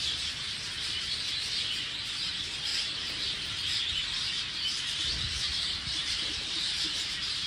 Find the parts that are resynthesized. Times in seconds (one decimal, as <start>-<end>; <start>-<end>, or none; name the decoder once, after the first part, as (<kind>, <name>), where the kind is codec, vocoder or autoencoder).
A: 2.7-7.5 (vocoder, BigVGAN v2)